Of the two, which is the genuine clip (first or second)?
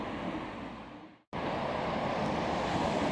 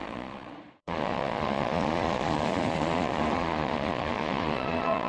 first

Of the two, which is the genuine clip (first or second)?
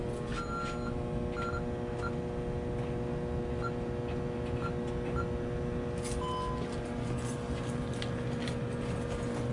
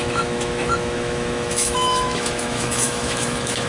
first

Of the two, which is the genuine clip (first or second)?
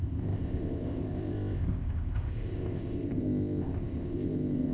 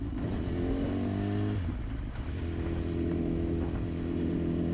second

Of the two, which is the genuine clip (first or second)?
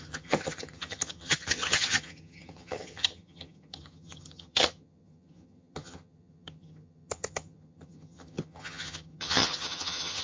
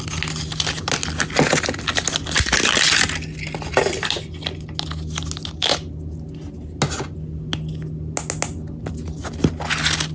second